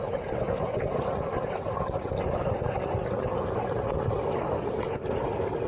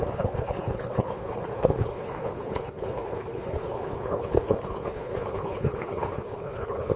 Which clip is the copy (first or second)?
second